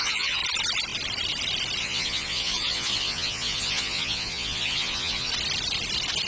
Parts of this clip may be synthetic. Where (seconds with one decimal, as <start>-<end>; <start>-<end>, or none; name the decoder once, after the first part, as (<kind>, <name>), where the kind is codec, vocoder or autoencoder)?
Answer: 0.0-0.4 (vocoder, Vocos); 1.8-5.3